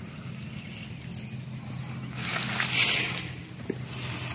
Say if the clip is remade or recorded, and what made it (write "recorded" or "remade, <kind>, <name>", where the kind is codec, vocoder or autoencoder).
recorded